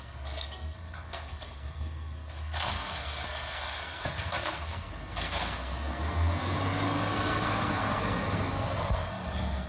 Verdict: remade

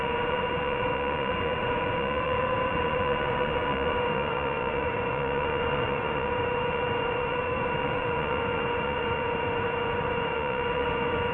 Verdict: remade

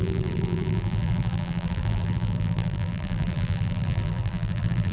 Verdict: remade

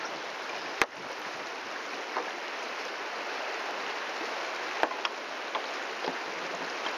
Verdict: recorded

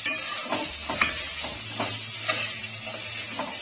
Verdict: recorded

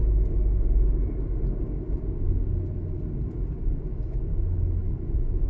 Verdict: recorded